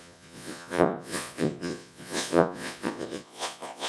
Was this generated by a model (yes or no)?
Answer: yes